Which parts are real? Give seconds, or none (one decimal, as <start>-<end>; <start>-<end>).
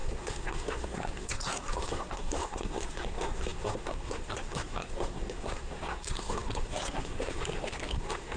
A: none